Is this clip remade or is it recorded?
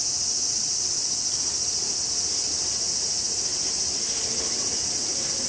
recorded